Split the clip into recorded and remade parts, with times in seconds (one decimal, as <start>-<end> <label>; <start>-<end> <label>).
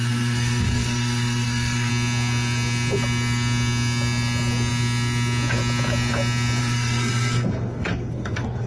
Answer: 0.0-1.9 remade; 1.9-6.6 recorded; 6.6-8.7 remade